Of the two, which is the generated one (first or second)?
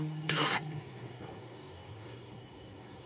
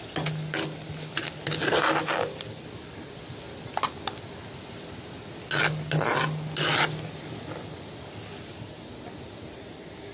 first